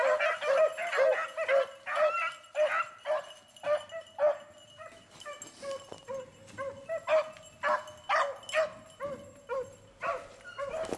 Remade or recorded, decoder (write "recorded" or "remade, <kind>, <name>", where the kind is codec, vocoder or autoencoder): recorded